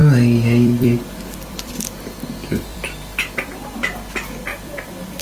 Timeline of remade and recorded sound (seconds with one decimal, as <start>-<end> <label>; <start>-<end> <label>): 0.0-1.7 remade; 1.7-2.7 recorded; 2.7-3.7 remade; 3.7-4.5 recorded; 4.5-5.2 remade